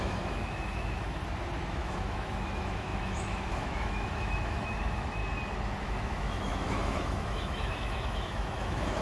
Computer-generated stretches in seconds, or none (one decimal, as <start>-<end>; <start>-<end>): 0.0-1.2; 1.7-5.2; 5.8-9.0